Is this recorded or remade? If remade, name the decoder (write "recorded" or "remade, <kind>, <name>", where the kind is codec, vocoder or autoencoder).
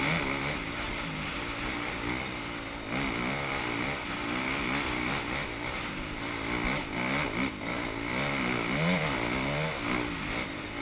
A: recorded